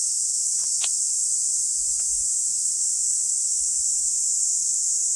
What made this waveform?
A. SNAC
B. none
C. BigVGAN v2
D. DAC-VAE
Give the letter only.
B